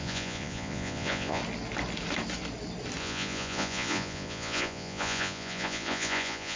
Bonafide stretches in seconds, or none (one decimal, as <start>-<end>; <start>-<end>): 1.4-3.0